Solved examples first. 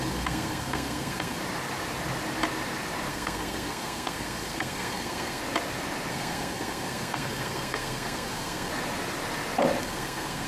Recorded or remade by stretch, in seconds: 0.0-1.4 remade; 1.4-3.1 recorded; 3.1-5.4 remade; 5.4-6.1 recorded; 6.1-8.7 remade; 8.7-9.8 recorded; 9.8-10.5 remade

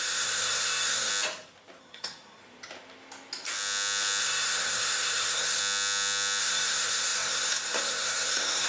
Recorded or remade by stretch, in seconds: 0.0-1.1 remade; 1.1-1.8 recorded; 1.8-2.4 remade; 2.4-4.2 recorded; 4.2-5.6 remade; 5.6-6.4 recorded; 6.4-8.7 remade

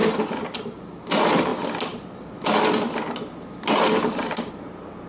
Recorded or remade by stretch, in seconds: 0.0-5.1 recorded

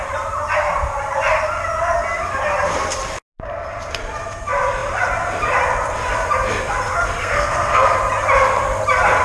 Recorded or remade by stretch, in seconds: 0.0-7.2 recorded; 7.2-7.9 remade; 7.9-9.2 recorded

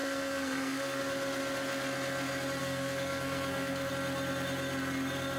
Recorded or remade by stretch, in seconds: 0.0-1.0 remade; 1.0-2.6 recorded; 2.6-3.9 remade; 3.9-5.4 recorded

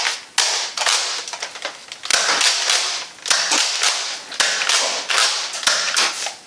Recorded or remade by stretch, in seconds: 0.0-6.5 recorded

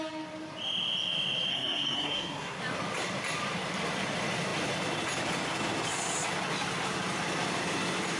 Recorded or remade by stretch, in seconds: 0.0-1.5 recorded; 1.5-2.6 remade; 2.6-8.2 recorded

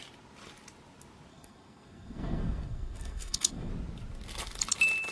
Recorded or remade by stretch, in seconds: 0.0-1.3 recorded; 1.3-3.7 remade; 3.7-5.1 recorded